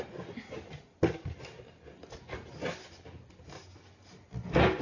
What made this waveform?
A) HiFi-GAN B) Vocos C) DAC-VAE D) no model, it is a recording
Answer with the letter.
D